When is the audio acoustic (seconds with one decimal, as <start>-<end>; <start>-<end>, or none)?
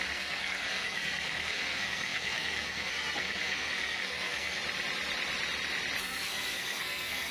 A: 4.6-6.0